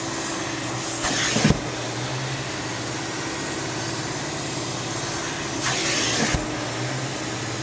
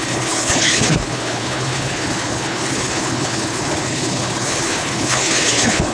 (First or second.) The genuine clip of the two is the first